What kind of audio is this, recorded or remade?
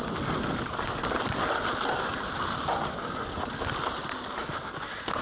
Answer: recorded